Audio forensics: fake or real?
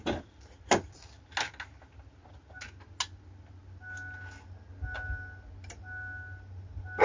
real